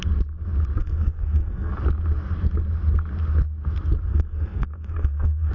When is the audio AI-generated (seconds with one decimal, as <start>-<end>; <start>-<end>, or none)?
0.8-1.7; 4.1-5.5